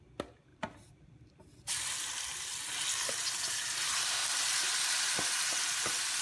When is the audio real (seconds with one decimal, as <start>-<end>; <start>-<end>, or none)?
0.0-0.5; 3.1-6.2